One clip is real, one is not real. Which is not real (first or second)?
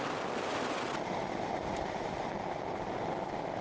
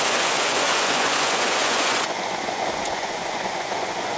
second